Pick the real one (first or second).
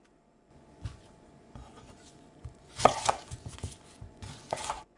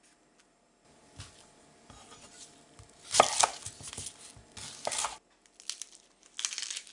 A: second